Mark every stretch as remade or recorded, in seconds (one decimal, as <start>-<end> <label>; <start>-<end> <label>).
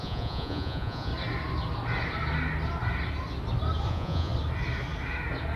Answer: 0.0-1.1 remade; 1.1-3.9 recorded; 3.9-4.3 remade; 4.3-5.6 recorded